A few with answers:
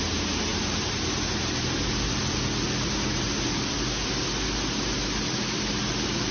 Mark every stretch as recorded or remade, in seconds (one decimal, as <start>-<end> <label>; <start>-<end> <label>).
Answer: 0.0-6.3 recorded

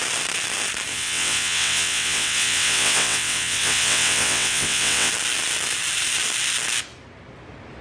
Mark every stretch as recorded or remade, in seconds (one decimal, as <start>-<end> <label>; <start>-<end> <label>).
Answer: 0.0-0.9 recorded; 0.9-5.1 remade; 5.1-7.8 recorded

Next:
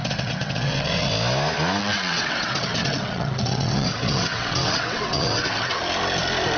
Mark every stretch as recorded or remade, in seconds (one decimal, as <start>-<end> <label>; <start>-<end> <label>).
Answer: 0.0-1.1 remade; 1.1-1.8 recorded; 1.8-5.8 remade; 5.8-6.6 recorded

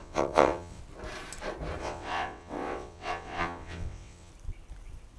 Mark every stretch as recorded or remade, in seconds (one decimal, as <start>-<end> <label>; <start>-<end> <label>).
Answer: 0.0-0.8 remade; 0.8-1.8 recorded; 1.8-4.3 remade; 4.3-5.2 recorded

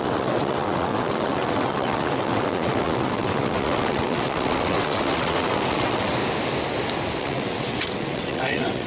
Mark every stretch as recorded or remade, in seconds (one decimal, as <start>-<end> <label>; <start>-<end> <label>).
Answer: 0.0-6.1 remade; 6.1-7.2 recorded; 7.2-8.9 remade

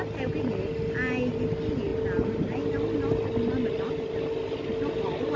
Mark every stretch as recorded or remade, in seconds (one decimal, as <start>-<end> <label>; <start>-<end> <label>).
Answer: 0.0-5.4 recorded